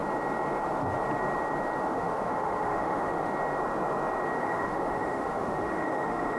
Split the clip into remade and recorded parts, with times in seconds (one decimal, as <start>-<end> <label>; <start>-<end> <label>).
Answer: 0.0-1.9 recorded; 1.9-3.3 remade; 3.3-4.4 recorded; 4.4-6.4 remade